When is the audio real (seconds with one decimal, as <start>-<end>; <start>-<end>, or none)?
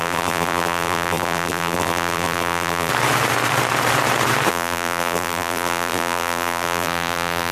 2.9-4.5